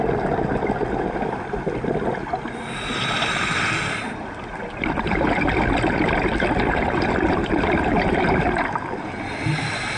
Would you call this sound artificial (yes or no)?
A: no